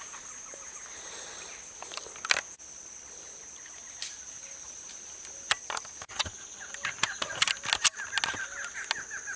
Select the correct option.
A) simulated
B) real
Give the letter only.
B